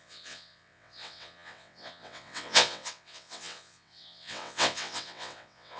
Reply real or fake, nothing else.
fake